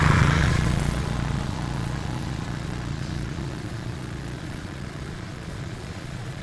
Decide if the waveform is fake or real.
fake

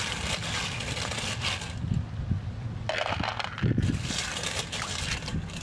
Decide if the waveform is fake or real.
real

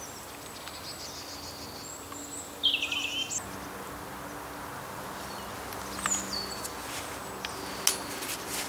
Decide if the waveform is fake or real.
real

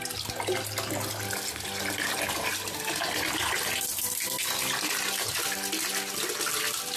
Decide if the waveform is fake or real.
real